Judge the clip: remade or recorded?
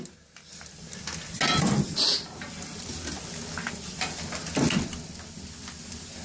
recorded